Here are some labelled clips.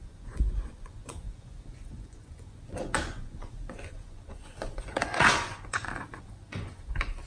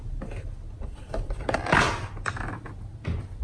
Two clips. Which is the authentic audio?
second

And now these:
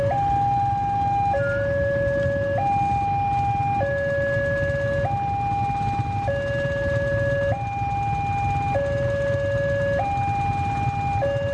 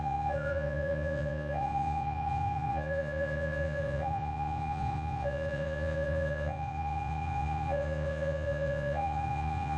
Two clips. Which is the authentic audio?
first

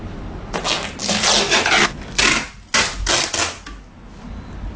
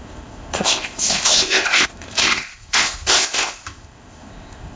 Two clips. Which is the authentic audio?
first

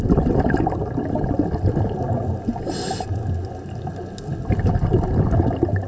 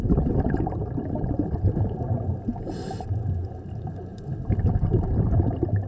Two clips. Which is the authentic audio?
first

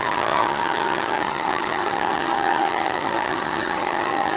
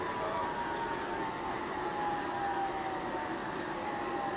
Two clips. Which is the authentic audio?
second